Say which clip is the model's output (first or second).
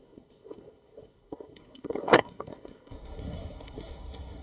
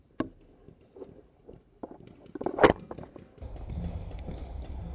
first